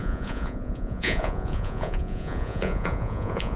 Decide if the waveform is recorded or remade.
remade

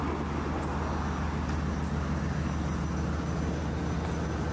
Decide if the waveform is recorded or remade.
recorded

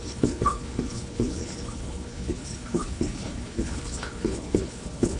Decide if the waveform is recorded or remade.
remade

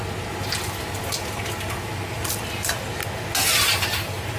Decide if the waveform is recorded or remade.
recorded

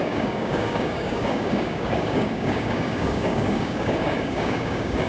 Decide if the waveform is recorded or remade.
remade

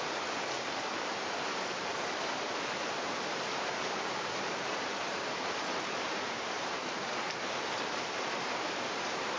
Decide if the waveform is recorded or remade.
remade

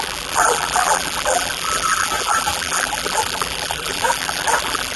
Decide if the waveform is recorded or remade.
remade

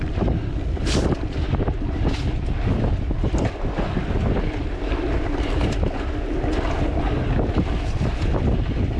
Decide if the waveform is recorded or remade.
recorded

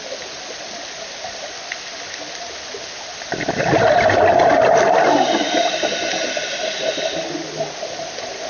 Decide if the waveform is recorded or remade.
recorded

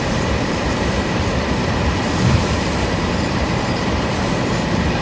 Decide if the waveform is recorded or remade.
remade